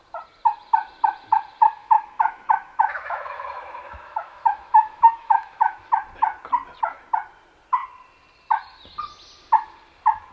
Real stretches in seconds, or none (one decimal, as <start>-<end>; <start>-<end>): 0.0-1.8; 5.8-10.3